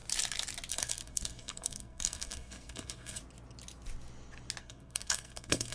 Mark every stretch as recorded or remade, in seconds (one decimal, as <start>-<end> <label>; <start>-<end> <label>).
0.0-0.7 recorded; 0.7-3.2 remade; 3.2-4.6 recorded; 4.6-5.7 remade